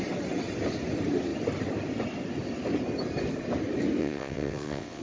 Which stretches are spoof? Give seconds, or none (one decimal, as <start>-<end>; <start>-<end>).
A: 4.0-5.0